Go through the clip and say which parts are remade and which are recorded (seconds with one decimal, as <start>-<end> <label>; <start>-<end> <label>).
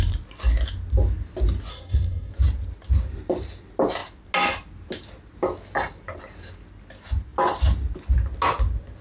0.0-1.7 recorded; 1.7-2.3 remade; 2.3-9.0 recorded